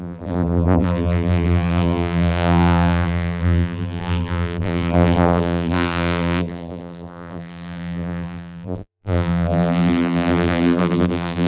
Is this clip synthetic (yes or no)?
yes